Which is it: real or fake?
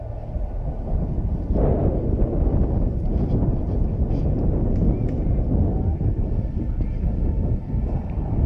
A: real